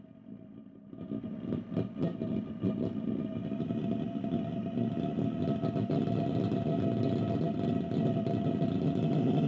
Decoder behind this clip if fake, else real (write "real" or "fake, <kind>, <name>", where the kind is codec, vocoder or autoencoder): real